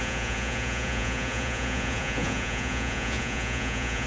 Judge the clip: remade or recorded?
remade